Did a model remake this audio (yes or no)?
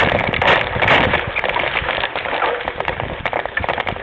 no